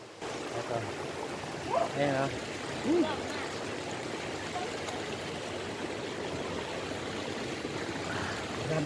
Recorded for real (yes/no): yes